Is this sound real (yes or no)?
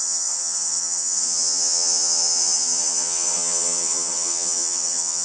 no